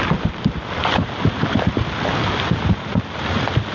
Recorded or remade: recorded